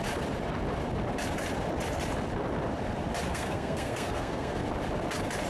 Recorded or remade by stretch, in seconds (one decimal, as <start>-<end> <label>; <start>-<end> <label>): 0.0-3.3 recorded; 3.3-4.6 remade; 4.6-5.5 recorded